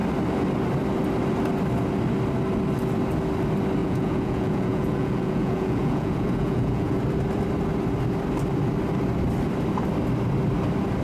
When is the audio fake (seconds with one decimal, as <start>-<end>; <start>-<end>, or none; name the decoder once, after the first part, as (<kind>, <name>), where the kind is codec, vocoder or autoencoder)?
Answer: 3.8-7.0 (vocoder, Vocos)